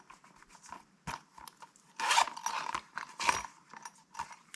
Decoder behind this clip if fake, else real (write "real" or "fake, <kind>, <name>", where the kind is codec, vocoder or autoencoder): real